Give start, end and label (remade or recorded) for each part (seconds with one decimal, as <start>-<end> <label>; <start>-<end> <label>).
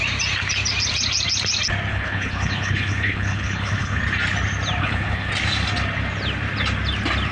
0.0-1.9 recorded; 1.9-4.0 remade; 4.0-4.8 recorded; 4.8-5.3 remade; 5.3-7.3 recorded